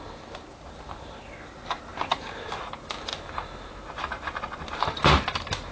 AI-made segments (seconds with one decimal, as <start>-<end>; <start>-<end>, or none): none